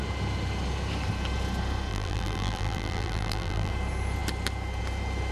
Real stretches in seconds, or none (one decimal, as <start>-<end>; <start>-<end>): 0.0-1.9; 3.7-5.3